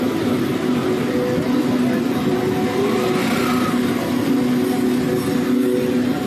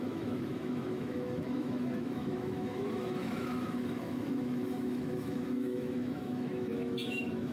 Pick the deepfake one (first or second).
second